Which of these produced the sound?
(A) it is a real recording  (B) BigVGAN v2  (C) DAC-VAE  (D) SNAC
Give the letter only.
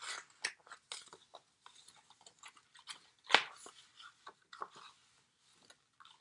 A